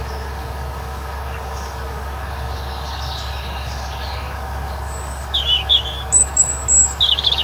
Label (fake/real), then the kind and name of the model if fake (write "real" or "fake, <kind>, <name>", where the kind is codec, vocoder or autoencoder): fake, codec, DAC